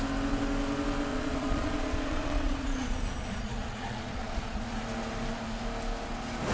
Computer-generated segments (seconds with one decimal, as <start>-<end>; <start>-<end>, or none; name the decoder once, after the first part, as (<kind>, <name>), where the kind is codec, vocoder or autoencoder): 1.1-4.6 (vocoder, Vocos)